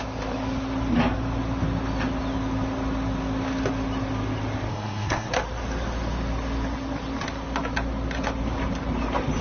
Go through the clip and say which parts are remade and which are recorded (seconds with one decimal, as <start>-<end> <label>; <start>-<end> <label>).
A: 0.0-4.7 recorded; 4.7-5.3 remade; 5.3-9.4 recorded